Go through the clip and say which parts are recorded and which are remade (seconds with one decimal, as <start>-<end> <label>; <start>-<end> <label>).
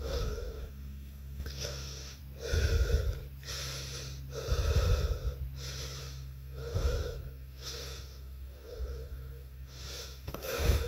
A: 0.0-2.2 remade; 2.2-6.0 recorded; 6.0-10.9 remade